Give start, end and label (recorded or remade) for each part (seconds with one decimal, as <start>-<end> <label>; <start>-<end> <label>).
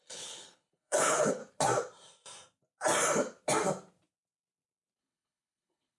0.0-1.4 remade; 1.4-5.0 recorded; 5.0-6.0 remade